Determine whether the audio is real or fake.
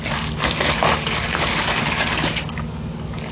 fake